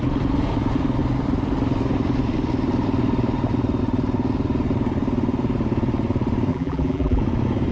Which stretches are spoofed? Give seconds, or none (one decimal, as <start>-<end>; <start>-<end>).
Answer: 6.5-7.2